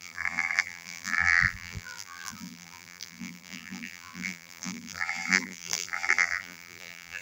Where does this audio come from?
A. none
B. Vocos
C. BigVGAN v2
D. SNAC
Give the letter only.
C